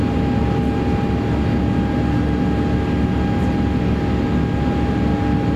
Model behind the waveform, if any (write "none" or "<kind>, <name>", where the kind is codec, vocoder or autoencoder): none